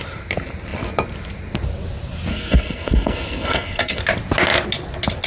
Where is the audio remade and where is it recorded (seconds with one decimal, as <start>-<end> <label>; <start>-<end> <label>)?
0.0-2.3 recorded; 2.3-4.0 remade; 4.0-5.3 recorded